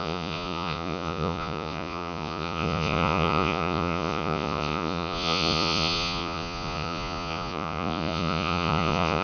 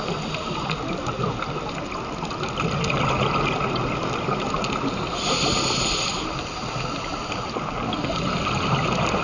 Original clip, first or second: second